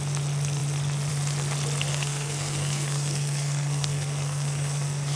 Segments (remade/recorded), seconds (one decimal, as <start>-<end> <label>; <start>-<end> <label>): 0.0-1.9 recorded; 1.9-5.2 remade